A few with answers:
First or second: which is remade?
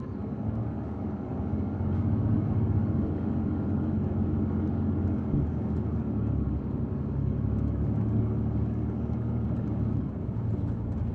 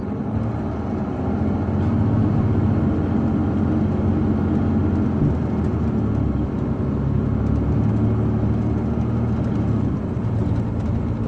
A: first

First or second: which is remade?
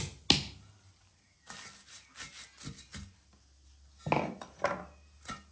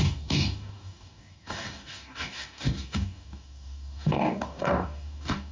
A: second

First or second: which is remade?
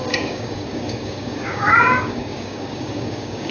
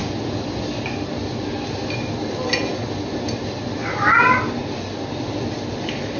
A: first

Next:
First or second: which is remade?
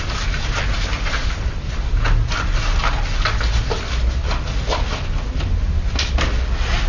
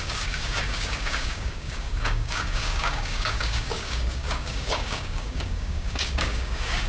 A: second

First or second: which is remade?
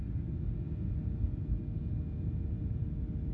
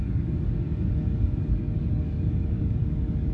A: second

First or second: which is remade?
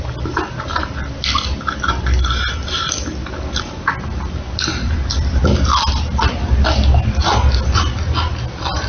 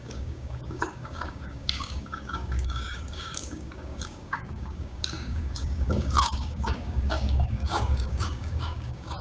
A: second